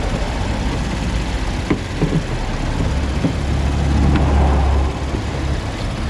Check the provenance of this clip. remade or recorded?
recorded